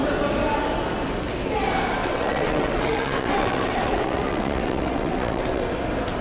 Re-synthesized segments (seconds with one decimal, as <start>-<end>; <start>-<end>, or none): 2.0-5.6